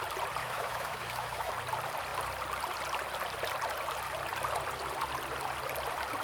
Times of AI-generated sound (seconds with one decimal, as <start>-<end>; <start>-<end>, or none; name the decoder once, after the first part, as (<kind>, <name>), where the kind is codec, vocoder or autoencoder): 0.4-1.5 (autoencoder, DAC-VAE)